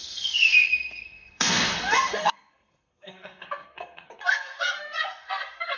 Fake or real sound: fake